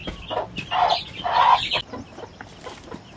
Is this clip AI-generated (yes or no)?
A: no